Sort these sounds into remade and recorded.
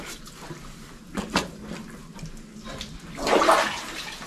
recorded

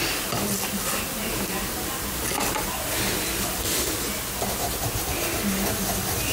recorded